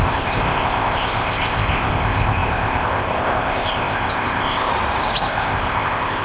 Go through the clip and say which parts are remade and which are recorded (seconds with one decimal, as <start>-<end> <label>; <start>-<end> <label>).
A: 0.0-4.7 remade; 4.7-5.3 recorded; 5.3-6.2 remade